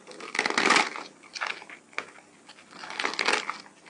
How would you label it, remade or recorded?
recorded